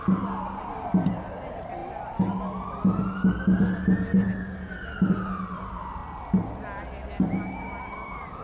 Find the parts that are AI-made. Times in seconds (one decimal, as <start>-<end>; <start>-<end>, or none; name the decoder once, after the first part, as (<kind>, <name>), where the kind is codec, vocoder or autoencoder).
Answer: 0.0-1.8 (vocoder, BigVGAN v2); 5.1-6.0